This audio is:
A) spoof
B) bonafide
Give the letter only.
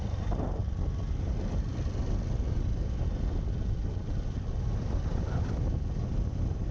B